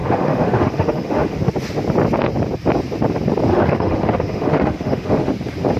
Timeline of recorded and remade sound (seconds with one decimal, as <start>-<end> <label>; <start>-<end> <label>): 0.0-1.4 remade; 1.4-3.5 recorded; 3.5-5.3 remade; 5.3-5.8 recorded